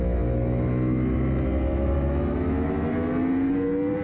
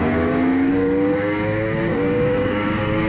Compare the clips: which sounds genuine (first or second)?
first